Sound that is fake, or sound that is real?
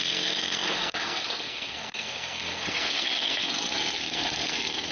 fake